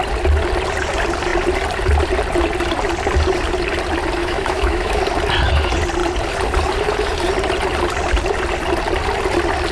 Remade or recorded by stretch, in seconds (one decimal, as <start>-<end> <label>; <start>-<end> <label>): 0.0-4.2 recorded; 4.2-5.0 remade; 5.0-9.7 recorded

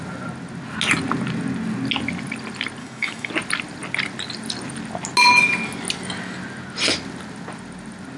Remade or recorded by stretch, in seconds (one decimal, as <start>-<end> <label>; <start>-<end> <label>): 0.0-2.8 recorded; 2.8-3.3 remade; 3.3-8.2 recorded

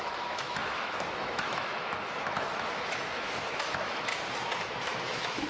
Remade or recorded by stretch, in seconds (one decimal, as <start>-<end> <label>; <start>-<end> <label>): 0.0-4.1 remade; 4.1-4.6 recorded; 4.6-5.5 remade

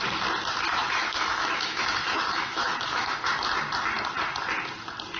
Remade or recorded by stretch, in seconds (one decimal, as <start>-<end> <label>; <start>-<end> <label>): 0.0-0.7 recorded; 0.7-3.3 remade; 3.3-5.2 recorded

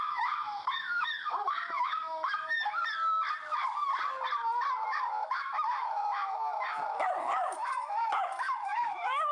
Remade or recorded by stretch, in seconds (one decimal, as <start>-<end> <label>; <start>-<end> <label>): 0.0-2.8 remade; 2.8-4.9 recorded; 4.9-9.3 remade

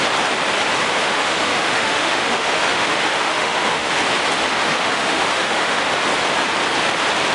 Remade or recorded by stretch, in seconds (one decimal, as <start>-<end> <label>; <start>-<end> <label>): 0.0-1.0 recorded; 1.0-3.9 remade; 3.9-4.6 recorded; 4.6-5.8 remade; 5.8-7.3 recorded